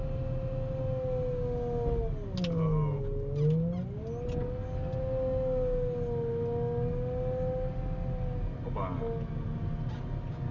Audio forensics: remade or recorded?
recorded